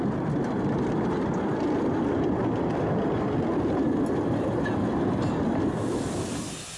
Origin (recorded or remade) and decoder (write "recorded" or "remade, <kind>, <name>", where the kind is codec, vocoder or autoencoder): recorded